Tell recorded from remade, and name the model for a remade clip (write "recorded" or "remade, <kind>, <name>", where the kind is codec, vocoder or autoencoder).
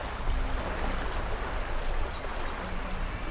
recorded